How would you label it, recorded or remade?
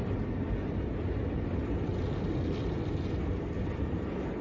recorded